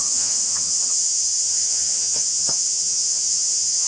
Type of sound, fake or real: fake